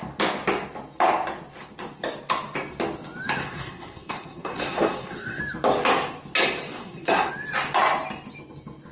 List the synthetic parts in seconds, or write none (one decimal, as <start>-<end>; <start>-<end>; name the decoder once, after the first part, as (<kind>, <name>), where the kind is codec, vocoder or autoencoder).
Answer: 3.4-5.4 (codec, SNAC); 6.7-7.3